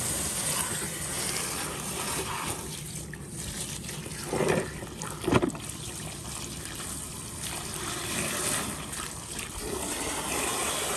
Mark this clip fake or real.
fake